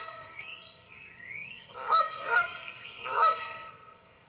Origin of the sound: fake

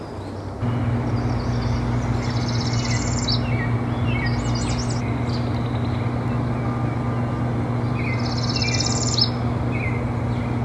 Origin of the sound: real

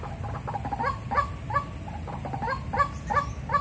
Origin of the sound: real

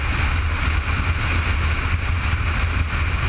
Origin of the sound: real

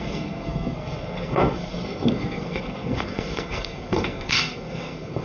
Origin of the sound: fake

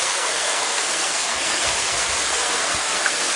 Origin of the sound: fake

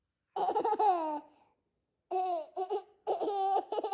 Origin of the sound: real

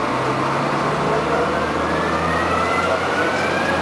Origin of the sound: real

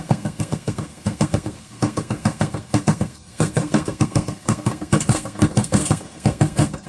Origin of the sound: fake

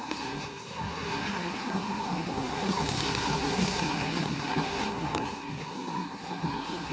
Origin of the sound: fake